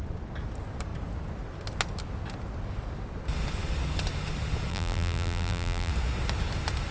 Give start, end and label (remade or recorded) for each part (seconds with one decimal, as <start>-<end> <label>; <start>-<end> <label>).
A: 0.0-4.7 recorded; 4.7-5.9 remade; 5.9-6.9 recorded